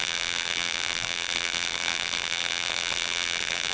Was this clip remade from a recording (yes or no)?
yes